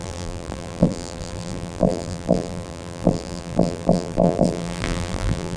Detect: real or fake fake